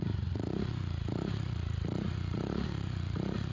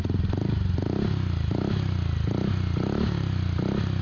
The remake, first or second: first